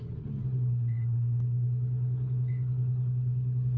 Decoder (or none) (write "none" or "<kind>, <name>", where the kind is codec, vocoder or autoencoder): codec, HILCodec